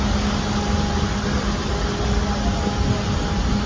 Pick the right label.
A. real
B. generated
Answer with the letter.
A